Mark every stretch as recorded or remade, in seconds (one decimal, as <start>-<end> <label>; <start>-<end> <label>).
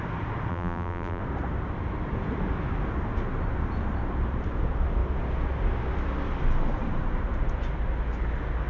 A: 0.0-0.5 recorded; 0.5-1.2 remade; 1.2-8.7 recorded